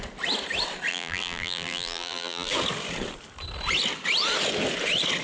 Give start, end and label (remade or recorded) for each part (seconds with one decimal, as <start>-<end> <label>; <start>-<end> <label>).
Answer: 0.0-0.9 recorded; 0.9-2.5 remade; 2.5-5.2 recorded